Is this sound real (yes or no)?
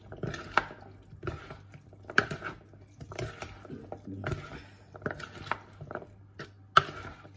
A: yes